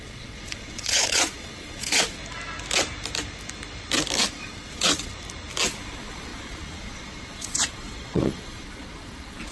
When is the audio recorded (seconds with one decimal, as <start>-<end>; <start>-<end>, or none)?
2.2-4.3; 5.1-5.7